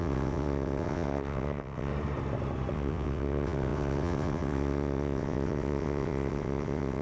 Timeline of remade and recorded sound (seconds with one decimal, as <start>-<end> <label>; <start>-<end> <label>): 0.0-1.9 remade; 1.9-2.7 recorded; 2.7-7.0 remade